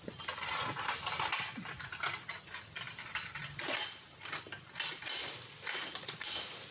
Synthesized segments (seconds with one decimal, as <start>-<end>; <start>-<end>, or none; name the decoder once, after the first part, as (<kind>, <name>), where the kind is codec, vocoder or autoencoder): none